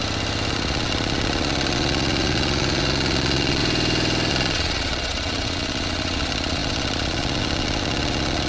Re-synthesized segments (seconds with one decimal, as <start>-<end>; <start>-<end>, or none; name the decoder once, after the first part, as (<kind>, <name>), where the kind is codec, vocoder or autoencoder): 0.5-3.6 (vocoder, Vocos); 4.3-8.5